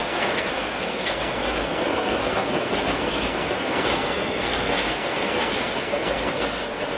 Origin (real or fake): fake